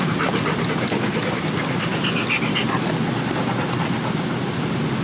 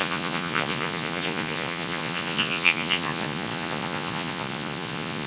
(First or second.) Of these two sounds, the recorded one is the first